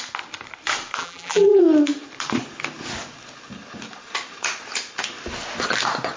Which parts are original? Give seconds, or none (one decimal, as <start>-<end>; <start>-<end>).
0.0-1.0; 1.6-6.2